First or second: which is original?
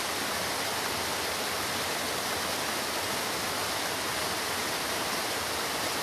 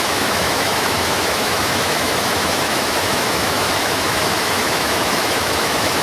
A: first